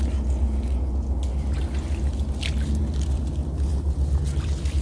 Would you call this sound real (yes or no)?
yes